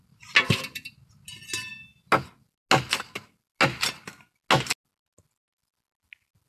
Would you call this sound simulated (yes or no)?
no